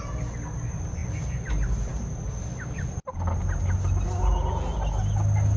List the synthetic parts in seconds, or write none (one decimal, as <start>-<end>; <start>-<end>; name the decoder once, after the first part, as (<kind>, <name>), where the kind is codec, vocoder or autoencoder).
none